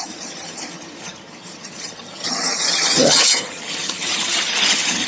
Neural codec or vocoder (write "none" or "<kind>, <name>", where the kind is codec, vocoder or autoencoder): vocoder, HiFi-GAN